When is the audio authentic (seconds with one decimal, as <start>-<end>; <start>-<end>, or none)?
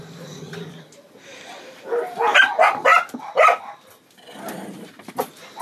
0.0-5.6